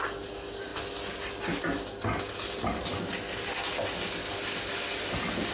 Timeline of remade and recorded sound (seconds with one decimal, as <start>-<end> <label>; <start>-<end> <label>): 0.0-5.5 recorded